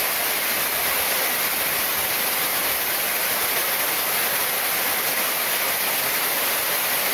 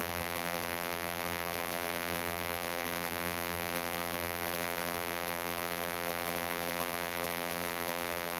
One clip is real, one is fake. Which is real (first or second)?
first